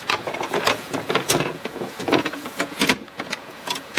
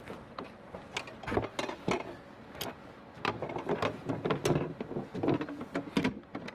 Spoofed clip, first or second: first